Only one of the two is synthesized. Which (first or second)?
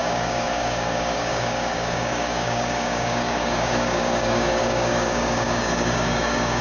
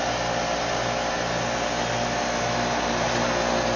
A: first